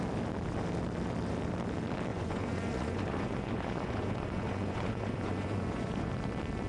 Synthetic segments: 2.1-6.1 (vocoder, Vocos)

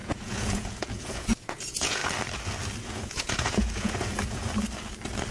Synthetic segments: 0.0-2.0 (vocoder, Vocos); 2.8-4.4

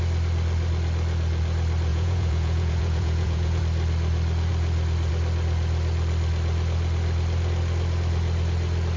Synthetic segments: 1.9-3.6 (vocoder, Vocos)

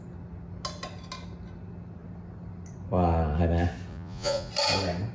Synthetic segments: 3.9-4.5 (vocoder, Vocos)